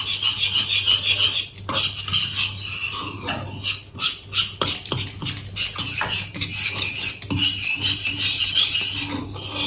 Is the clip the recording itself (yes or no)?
yes